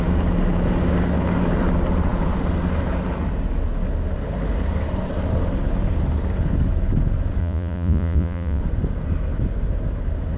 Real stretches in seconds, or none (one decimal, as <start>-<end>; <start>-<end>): 0.0-7.4; 8.6-10.4